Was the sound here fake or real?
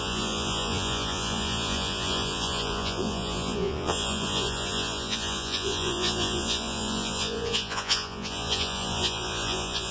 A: fake